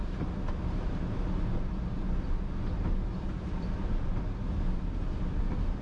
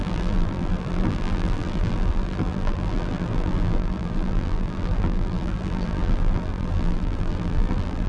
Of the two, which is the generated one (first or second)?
second